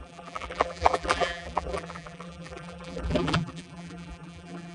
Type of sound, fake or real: fake